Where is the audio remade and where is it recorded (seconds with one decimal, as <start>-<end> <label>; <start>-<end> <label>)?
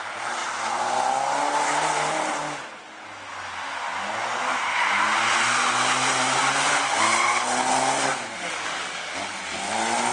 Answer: 0.0-8.1 recorded; 8.1-9.4 remade; 9.4-10.1 recorded